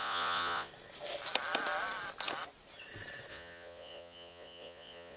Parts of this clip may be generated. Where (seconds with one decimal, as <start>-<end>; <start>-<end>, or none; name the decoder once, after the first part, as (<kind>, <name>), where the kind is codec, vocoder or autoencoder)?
0.0-0.7 (vocoder, Vocos); 3.3-5.2